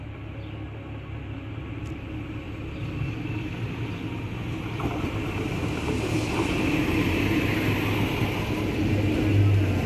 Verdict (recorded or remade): recorded